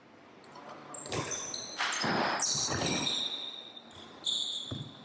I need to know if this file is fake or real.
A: real